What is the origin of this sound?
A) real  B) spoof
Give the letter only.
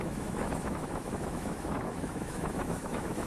B